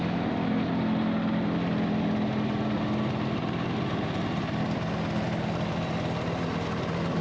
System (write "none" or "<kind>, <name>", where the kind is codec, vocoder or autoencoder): none